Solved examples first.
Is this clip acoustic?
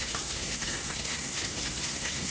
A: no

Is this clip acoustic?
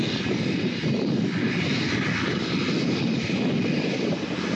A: yes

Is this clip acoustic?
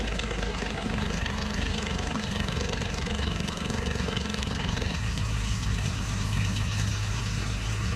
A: no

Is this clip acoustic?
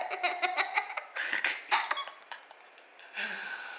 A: yes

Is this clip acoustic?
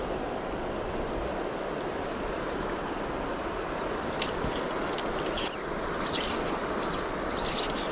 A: yes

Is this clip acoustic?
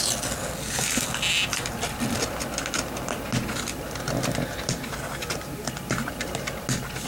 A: yes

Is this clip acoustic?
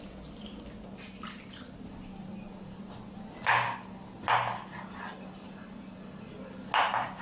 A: yes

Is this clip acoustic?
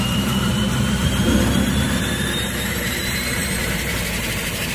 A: no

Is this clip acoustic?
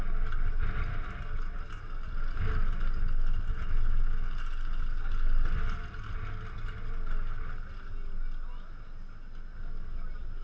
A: yes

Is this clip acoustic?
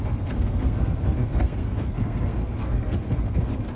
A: no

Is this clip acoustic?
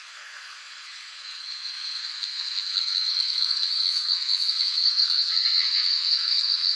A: no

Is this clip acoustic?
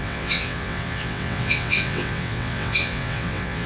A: no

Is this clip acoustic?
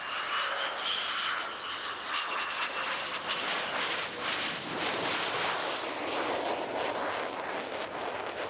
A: yes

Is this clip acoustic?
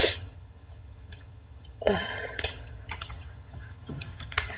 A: no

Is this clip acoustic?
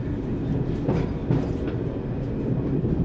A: yes